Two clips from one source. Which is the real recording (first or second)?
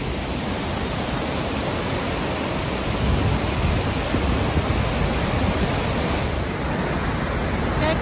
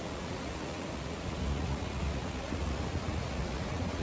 first